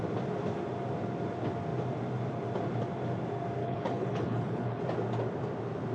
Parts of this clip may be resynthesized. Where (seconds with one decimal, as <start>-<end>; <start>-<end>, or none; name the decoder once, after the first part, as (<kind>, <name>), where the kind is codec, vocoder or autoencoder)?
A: 3.6-4.8 (codec, HILCodec)